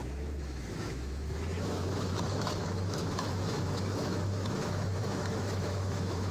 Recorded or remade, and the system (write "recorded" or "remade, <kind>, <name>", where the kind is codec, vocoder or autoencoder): remade, autoencoder, DAC-VAE